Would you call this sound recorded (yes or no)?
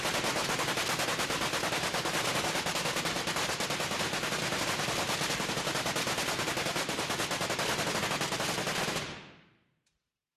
yes